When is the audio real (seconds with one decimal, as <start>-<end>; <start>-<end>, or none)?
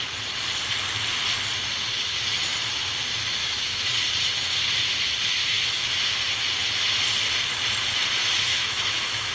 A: 0.0-3.4; 3.9-5.4; 5.9-8.5